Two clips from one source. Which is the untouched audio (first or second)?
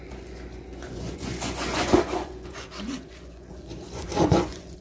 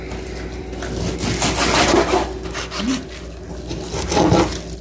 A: second